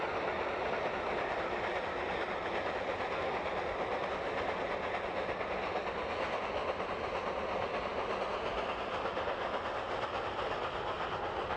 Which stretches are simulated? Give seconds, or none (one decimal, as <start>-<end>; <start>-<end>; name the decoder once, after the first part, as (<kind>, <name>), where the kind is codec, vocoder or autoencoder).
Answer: none